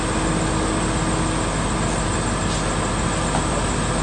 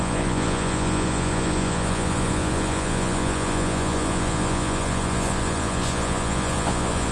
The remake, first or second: second